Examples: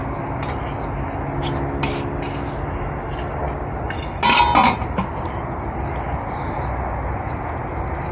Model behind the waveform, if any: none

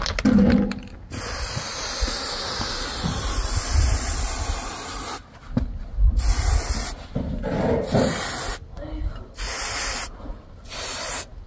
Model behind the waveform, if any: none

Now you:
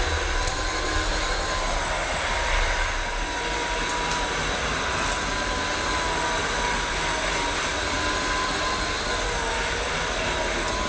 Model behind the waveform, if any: none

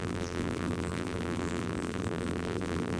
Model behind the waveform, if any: vocoder, BigVGAN v2